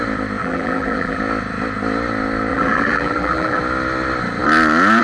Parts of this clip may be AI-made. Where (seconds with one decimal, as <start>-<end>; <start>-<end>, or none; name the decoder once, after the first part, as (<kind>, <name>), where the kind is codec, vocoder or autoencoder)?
0.4-1.2 (vocoder, BigVGAN v2); 2.5-3.6